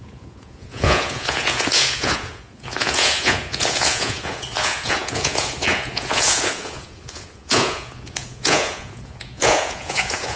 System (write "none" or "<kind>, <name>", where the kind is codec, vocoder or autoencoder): vocoder, Vocos